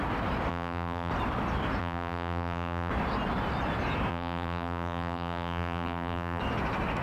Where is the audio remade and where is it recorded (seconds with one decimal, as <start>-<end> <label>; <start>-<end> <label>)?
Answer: 0.0-0.5 recorded; 0.5-1.1 remade; 1.1-1.8 recorded; 1.8-2.9 remade; 2.9-4.1 recorded; 4.1-6.4 remade; 6.4-7.0 recorded